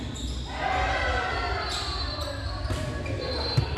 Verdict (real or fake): real